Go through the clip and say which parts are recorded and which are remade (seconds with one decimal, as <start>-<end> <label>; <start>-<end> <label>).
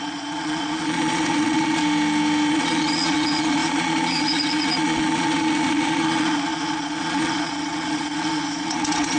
0.0-1.8 remade; 1.8-2.5 recorded; 2.5-9.2 remade